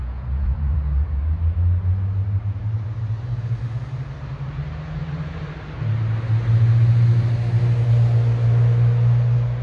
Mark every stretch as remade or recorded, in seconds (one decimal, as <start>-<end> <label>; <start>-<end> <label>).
0.0-1.2 remade; 1.2-9.6 recorded